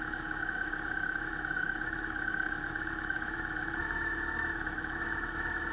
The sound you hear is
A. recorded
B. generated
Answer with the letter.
B